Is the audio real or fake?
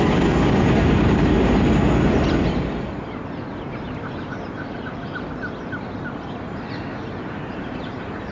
real